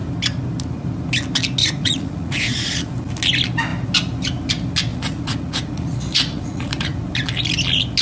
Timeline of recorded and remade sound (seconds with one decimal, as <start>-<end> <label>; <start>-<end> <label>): 0.0-1.6 recorded; 1.6-2.9 remade; 2.9-4.9 recorded; 4.9-7.0 remade; 7.0-8.0 recorded